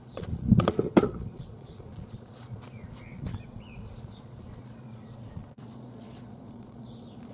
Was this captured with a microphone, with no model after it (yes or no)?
no